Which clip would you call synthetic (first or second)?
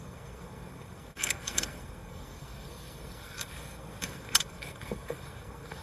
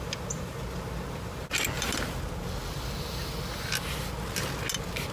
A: first